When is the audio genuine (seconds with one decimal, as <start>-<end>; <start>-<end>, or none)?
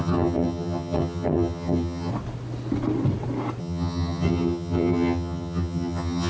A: 2.1-3.6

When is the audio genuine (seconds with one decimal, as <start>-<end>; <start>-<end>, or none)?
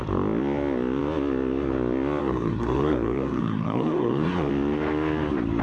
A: 0.0-2.2; 4.5-5.6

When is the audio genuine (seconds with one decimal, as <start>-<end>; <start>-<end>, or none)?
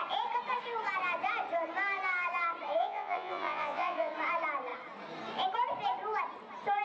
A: 0.0-2.8; 4.1-6.8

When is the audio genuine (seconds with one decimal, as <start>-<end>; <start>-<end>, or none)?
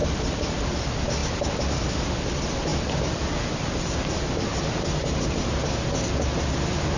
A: 0.6-1.2; 1.8-2.7; 4.0-7.0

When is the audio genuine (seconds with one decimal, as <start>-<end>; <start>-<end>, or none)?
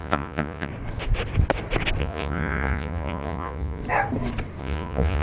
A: 0.7-2.0; 3.8-4.6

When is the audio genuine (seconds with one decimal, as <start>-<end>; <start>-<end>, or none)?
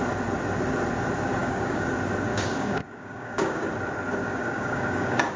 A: 0.0-1.4; 1.9-2.3; 3.7-4.2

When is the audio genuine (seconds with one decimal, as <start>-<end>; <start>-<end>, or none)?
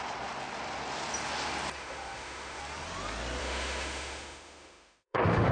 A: 0.0-1.8; 2.6-3.4